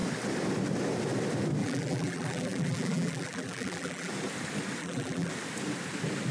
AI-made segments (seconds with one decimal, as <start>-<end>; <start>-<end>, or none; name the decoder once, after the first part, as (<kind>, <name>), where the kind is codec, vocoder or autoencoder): 1.6-4.1 (vocoder, BigVGAN v2); 4.8-5.3